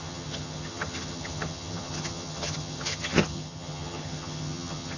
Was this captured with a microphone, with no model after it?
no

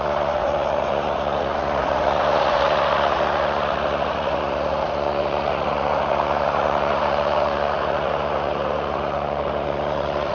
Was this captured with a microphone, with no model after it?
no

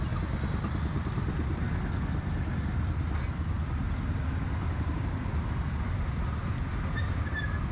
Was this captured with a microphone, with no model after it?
yes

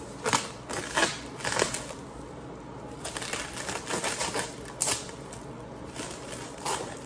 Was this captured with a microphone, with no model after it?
yes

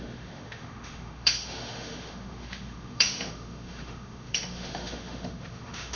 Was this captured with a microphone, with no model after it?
no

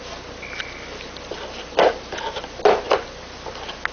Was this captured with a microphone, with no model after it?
yes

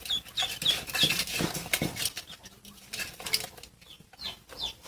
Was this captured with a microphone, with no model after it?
yes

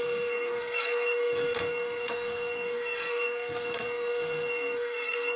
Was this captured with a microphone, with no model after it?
no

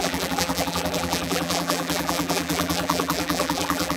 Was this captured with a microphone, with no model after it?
no